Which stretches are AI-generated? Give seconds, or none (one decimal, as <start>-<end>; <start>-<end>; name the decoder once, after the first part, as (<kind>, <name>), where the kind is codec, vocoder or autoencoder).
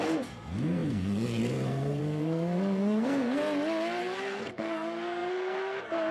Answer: 0.0-3.4 (codec, SNAC); 4.0-6.1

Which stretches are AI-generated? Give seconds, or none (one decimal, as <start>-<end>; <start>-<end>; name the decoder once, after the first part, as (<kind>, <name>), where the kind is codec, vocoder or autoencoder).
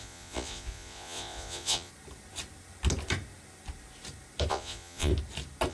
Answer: 0.0-1.9 (vocoder, Vocos); 4.5-5.1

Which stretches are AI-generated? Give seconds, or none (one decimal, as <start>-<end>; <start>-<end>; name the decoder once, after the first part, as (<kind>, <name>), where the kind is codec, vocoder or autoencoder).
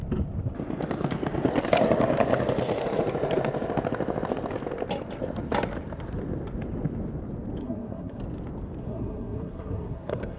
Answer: 7.6-8.2 (codec, SNAC); 8.8-10.4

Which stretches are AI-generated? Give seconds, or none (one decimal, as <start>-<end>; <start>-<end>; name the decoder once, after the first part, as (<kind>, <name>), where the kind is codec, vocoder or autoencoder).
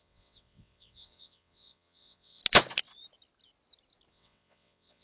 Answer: 0.0-2.4 (vocoder, WaveNeXt); 4.1-5.0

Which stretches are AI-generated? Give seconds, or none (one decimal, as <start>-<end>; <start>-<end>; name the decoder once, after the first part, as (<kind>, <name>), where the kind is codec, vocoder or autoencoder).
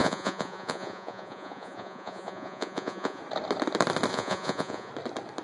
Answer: 0.0-3.2 (vocoder, Vocos); 4.1-4.9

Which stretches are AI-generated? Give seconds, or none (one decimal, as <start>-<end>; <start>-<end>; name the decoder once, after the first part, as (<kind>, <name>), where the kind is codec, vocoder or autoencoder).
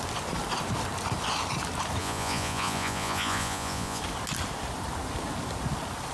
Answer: 2.0-4.0 (vocoder, Vocos)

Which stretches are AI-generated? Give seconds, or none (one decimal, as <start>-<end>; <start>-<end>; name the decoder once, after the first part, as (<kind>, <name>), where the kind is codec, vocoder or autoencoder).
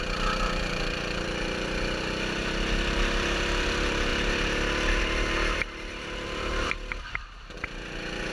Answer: 0.0-8.3 (vocoder, BigVGAN v2)